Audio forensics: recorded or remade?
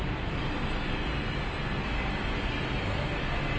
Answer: recorded